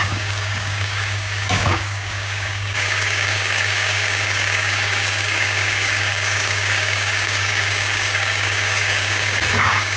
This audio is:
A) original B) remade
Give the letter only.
B